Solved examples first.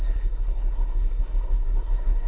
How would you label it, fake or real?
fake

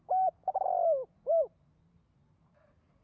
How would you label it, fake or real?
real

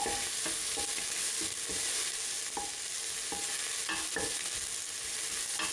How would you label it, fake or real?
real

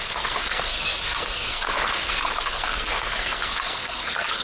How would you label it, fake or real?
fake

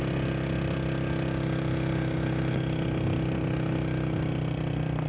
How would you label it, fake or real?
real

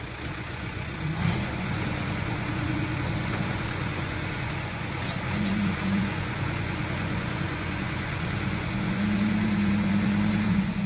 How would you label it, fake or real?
fake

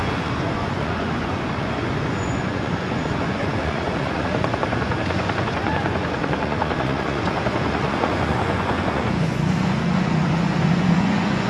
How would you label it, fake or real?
fake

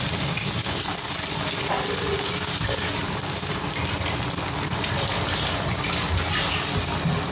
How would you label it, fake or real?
real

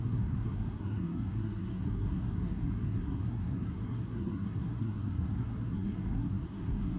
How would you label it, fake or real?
fake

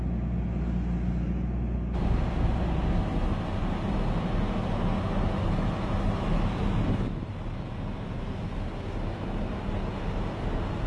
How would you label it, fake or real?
real